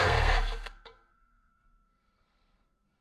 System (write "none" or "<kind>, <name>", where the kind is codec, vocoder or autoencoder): codec, SNAC